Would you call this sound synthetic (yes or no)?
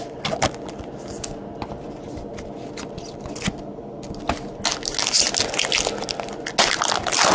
no